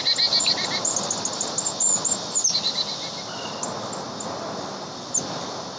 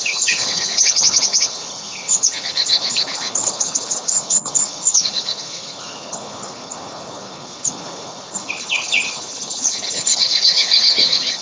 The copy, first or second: second